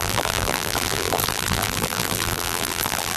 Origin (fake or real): fake